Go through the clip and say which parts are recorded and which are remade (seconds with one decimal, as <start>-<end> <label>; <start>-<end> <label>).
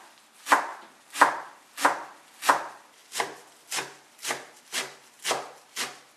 0.0-0.7 recorded; 0.7-1.6 remade; 1.6-6.2 recorded